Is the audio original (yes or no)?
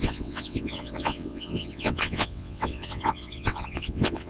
no